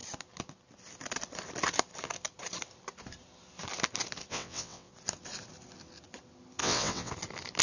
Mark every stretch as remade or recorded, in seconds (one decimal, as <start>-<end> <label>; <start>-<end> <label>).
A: 0.0-4.3 recorded; 4.3-4.9 remade; 4.9-6.6 recorded; 6.6-7.1 remade; 7.1-7.6 recorded